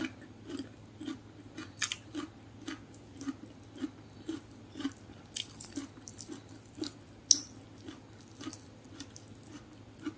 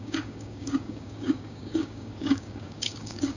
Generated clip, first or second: second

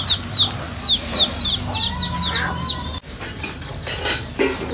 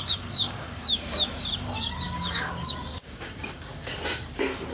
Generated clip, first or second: second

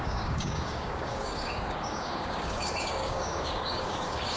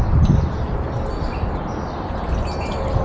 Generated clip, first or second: first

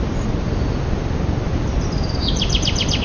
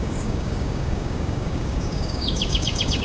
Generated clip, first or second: second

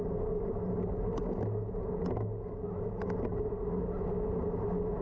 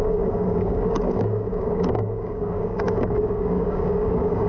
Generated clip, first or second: second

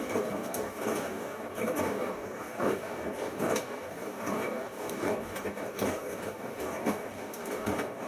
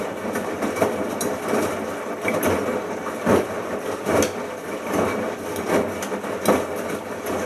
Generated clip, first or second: first